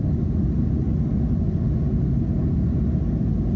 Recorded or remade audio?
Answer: recorded